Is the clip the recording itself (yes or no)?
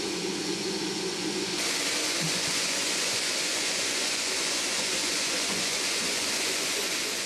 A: no